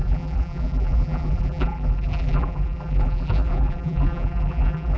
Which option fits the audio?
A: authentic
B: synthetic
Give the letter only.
B